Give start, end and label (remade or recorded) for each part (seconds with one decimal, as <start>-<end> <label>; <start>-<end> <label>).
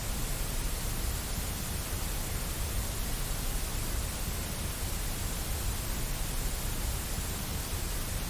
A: 0.0-8.3 recorded